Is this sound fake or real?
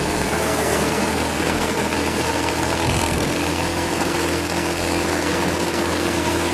fake